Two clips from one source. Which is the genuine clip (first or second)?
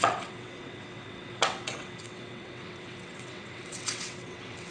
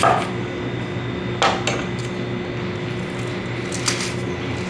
second